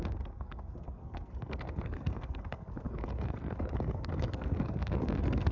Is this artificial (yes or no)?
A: yes